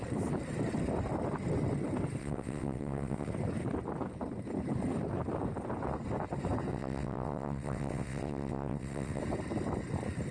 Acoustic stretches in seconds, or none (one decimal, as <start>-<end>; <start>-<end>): 0.0-2.2; 3.3-6.7; 9.2-10.3